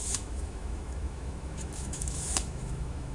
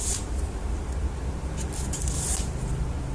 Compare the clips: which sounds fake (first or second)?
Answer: first